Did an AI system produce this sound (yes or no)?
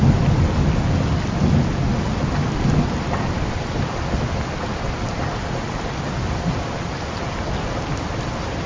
no